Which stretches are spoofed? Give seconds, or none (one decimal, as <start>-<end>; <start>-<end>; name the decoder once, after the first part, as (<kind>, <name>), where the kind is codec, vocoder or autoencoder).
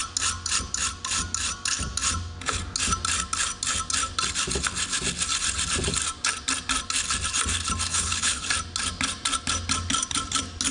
7.9-8.5 (codec, HILCodec)